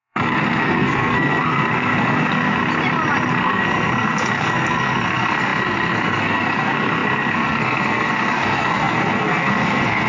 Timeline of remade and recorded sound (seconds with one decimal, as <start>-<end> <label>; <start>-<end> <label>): 0.0-2.6 remade; 2.6-3.3 recorded; 3.3-10.1 remade